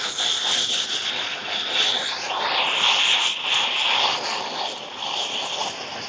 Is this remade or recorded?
remade